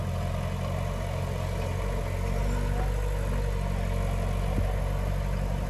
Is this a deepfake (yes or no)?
no